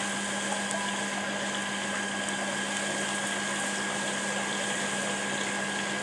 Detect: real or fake real